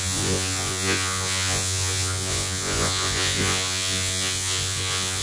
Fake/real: fake